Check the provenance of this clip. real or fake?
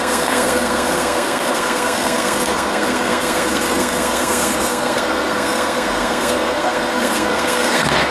fake